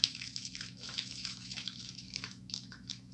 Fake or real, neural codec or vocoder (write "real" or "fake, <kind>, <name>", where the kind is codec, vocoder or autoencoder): fake, autoencoder, DAC-VAE